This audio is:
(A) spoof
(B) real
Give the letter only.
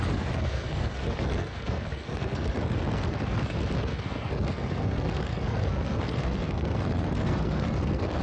A